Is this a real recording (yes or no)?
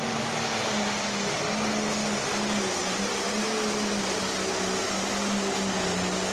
yes